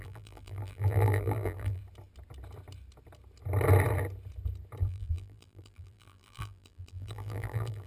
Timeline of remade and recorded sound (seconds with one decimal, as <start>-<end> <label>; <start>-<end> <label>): 0.0-1.8 remade; 1.8-4.8 recorded; 4.8-7.9 remade